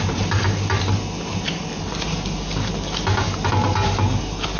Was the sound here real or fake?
real